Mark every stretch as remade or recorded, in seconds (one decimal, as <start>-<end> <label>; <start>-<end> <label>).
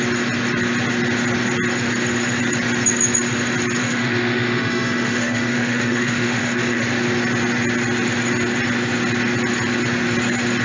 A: 0.0-3.8 recorded; 3.8-6.8 remade; 6.8-10.6 recorded